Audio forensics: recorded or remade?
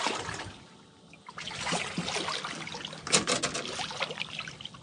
recorded